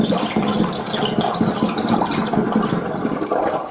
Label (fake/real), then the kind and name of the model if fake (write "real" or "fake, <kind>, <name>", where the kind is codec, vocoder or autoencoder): real